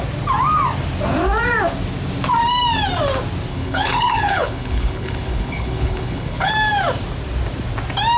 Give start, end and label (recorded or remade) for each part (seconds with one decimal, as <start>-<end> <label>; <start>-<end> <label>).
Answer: 0.0-3.5 recorded; 3.5-6.5 remade; 6.5-8.2 recorded